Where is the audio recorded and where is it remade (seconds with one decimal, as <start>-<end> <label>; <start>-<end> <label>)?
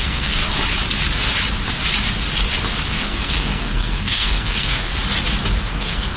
0.0-0.4 remade; 0.4-2.9 recorded; 2.9-4.9 remade; 4.9-5.7 recorded; 5.7-6.2 remade